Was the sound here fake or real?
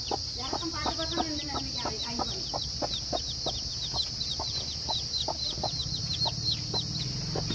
real